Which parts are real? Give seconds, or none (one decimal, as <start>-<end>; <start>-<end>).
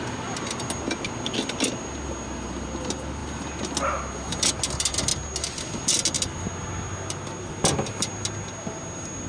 0.0-9.3